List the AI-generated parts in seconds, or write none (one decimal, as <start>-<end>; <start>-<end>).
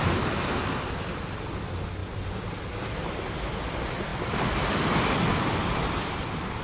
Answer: none